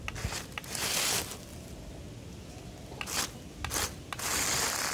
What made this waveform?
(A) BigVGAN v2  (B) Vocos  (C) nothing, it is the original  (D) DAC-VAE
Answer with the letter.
C